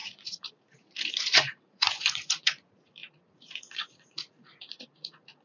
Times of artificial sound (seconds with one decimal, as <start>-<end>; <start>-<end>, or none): 0.0-5.4